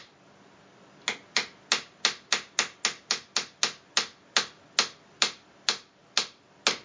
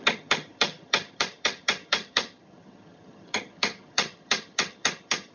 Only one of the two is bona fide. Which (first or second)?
first